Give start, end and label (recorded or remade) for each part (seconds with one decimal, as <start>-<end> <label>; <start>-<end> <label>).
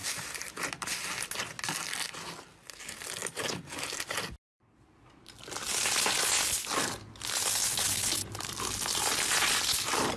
0.0-0.5 remade; 0.5-10.2 recorded